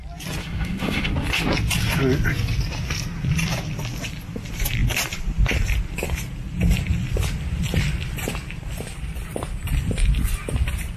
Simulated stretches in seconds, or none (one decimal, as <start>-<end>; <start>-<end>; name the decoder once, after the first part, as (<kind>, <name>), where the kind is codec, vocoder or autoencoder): 0.4-1.1 (autoencoder, DAC-VAE)